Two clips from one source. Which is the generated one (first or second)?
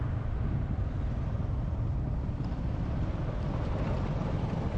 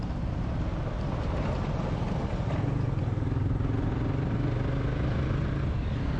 first